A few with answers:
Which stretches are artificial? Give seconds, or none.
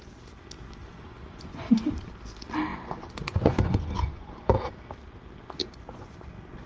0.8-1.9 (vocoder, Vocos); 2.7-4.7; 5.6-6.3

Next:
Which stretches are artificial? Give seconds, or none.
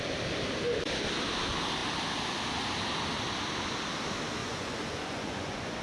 4.4-5.8 (vocoder, Vocos)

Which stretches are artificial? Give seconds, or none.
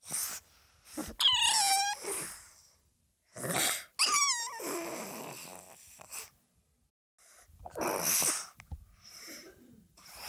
none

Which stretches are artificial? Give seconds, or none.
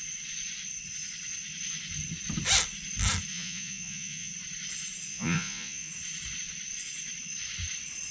3.3-4.3 (vocoder, Vocos); 5.1-5.9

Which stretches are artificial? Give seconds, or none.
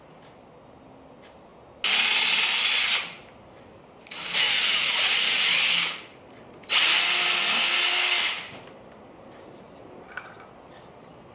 none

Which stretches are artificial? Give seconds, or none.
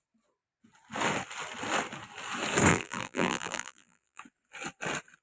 2.7-4.2 (vocoder, BigVGAN v2)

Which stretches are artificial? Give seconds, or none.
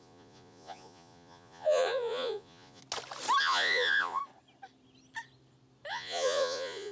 0.0-2.8 (vocoder, Vocos); 3.4-4.2; 5.9-6.9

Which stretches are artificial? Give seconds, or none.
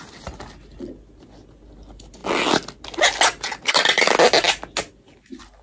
none